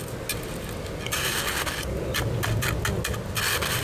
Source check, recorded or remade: recorded